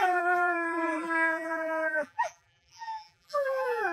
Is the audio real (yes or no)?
no